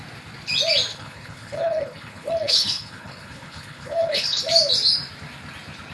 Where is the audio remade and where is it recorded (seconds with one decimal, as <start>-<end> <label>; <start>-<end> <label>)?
0.0-0.9 recorded; 0.9-4.4 remade; 4.4-5.9 recorded